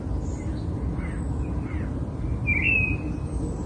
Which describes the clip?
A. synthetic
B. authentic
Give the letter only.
B